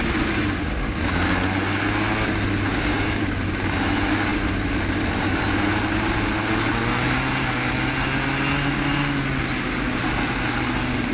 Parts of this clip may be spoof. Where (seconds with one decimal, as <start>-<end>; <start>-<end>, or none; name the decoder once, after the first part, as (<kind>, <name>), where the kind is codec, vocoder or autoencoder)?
2.7-3.2 (codec, DAC)